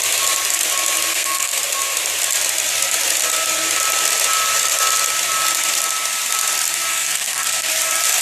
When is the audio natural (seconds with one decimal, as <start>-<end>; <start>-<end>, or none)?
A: 0.0-1.1; 1.6-6.9; 7.7-8.2